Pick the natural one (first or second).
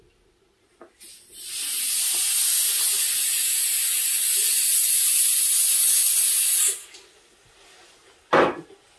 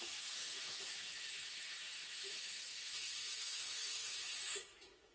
first